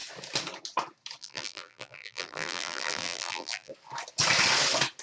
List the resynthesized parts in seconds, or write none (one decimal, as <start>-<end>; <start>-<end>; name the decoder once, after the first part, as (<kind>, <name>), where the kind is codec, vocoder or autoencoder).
1.2-3.7 (vocoder, BigVGAN v2)